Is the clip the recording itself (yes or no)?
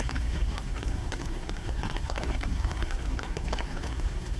no